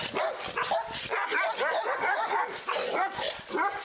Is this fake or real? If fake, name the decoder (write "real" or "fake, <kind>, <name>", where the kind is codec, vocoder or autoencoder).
real